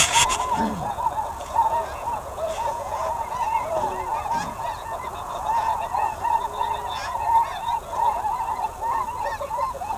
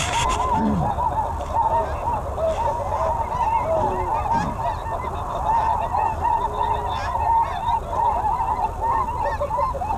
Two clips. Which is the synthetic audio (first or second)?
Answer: first